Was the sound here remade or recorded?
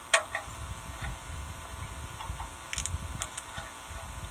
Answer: recorded